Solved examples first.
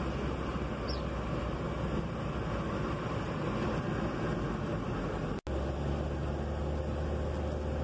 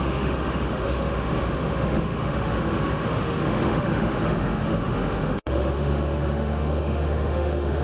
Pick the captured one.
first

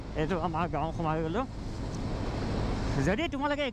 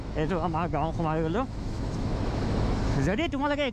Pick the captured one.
first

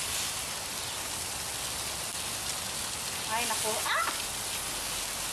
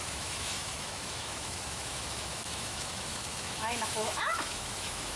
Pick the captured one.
first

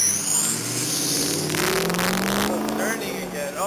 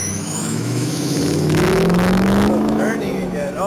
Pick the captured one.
first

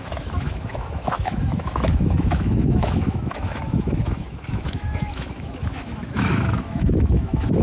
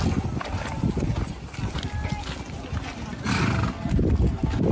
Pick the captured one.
second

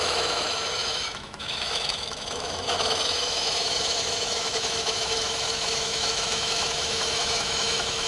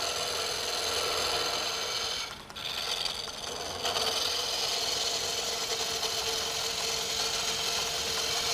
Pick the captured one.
second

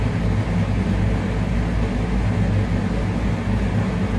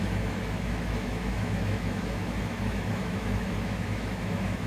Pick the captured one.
first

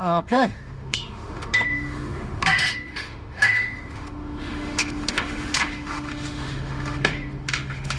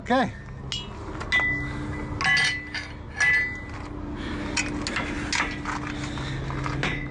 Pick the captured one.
second